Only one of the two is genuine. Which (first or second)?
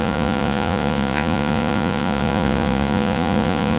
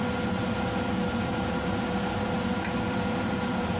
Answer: second